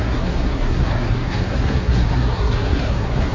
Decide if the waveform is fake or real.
fake